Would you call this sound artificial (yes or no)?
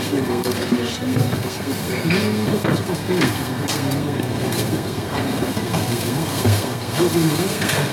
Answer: yes